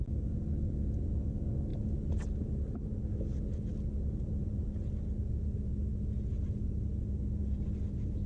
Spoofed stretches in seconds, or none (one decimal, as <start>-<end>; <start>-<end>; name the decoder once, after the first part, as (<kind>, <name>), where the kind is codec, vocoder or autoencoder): none